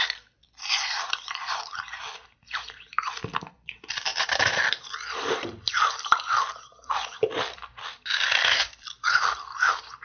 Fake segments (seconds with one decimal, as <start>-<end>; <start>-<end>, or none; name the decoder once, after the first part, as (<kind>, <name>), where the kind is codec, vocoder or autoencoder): 0.0-10.0 (vocoder, BigVGAN v2)